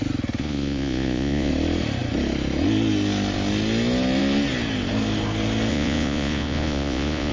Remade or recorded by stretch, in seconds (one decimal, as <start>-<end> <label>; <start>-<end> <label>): 0.0-0.4 recorded; 0.4-1.5 remade; 1.5-5.7 recorded; 5.7-7.3 remade